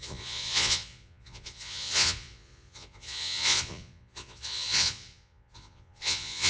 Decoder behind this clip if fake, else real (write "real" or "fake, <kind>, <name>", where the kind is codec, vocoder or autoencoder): fake, vocoder, Vocos